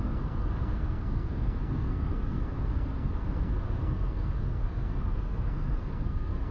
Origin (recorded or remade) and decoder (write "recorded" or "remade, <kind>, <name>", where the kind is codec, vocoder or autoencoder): remade, codec, SNAC